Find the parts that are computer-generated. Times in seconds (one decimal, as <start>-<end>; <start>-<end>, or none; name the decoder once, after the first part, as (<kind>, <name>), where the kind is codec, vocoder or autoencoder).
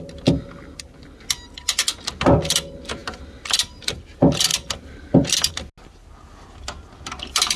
none